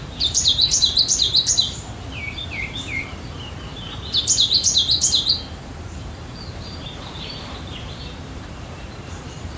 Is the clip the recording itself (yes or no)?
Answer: no